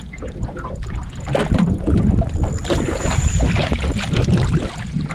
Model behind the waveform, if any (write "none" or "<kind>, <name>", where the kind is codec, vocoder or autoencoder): none